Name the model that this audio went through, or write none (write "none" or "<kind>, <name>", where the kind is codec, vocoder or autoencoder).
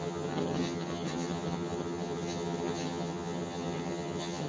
vocoder, HiFi-GAN